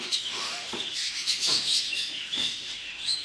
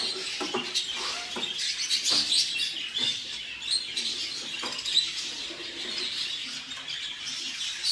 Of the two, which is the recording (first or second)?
second